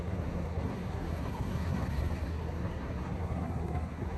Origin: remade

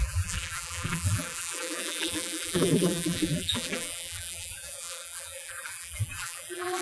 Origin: remade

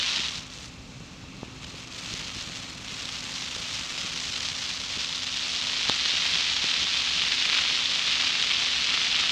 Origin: recorded